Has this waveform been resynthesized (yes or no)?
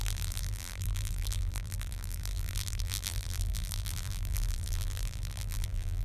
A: yes